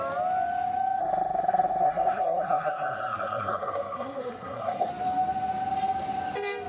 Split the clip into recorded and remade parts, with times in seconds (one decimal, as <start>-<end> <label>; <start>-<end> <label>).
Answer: 0.0-1.0 recorded; 1.0-4.9 remade; 4.9-6.7 recorded